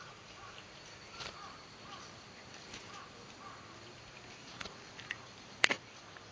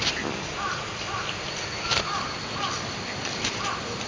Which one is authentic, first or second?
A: second